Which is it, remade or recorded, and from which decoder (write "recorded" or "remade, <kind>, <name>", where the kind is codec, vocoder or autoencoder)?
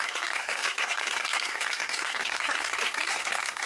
remade, codec, SNAC